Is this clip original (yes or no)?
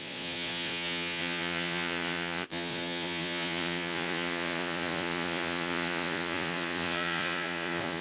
no